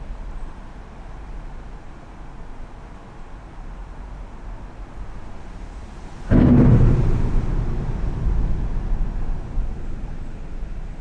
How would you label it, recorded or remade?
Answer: recorded